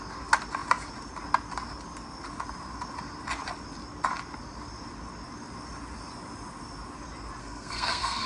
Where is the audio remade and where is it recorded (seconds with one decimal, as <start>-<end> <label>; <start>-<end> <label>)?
0.0-7.4 recorded; 7.4-8.3 remade